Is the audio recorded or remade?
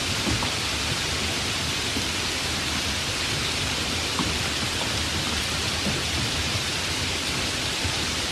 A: recorded